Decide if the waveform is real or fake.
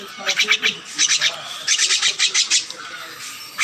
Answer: real